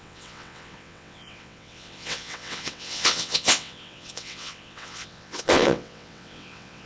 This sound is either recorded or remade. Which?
remade